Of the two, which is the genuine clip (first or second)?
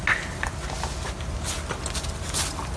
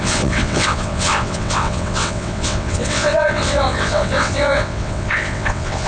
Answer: first